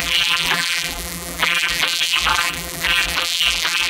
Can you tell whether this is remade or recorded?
remade